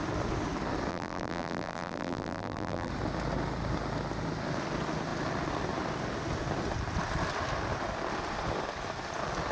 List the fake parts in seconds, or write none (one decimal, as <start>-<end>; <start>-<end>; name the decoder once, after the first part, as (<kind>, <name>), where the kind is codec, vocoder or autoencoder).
0.9-2.9 (vocoder, BigVGAN v2)